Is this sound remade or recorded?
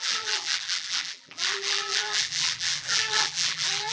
remade